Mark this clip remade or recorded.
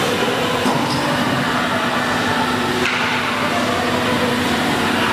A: recorded